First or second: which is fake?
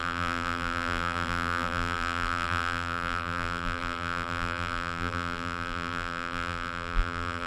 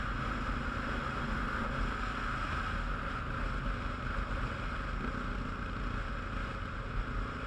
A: first